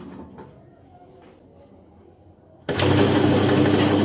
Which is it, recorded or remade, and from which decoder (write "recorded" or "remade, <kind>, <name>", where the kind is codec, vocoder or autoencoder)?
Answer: recorded